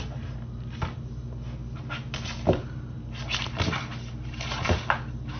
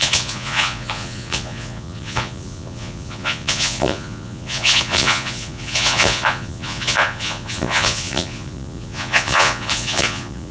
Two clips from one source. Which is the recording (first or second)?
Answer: first